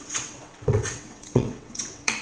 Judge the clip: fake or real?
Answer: fake